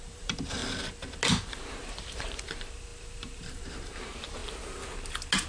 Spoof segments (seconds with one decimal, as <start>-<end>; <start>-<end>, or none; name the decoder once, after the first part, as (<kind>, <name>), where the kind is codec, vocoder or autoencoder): 0.0-0.6 (vocoder, BigVGAN v2); 1.5-4.4